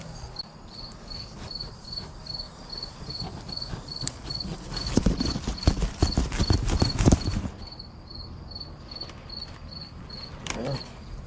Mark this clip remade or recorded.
recorded